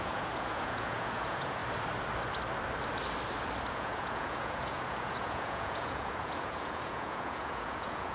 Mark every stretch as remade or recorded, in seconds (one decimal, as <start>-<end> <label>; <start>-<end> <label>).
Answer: 0.0-1.6 remade; 1.6-3.7 recorded; 3.7-8.1 remade